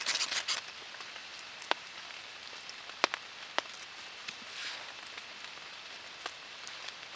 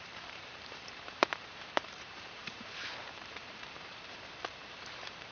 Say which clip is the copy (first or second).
second